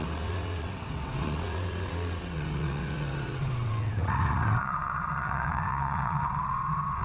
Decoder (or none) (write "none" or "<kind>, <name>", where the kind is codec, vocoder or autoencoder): vocoder, WaveNeXt